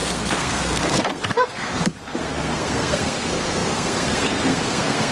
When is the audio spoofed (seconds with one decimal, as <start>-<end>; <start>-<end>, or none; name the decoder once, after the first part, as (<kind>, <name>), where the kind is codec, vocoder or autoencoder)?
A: 0.0-5.1 (codec, SNAC)